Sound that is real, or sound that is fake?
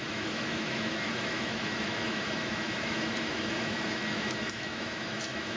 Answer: fake